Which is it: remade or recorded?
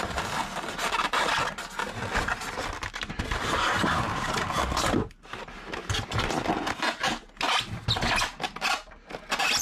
recorded